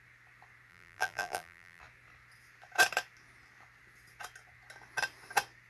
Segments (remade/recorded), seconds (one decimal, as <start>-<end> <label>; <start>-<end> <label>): 0.0-0.7 recorded; 0.7-1.8 remade; 1.8-5.7 recorded